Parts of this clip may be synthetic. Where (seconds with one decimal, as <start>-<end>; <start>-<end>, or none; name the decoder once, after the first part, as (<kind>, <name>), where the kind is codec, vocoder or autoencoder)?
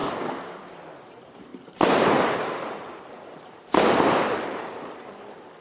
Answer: 1.1-5.6 (vocoder, BigVGAN v2)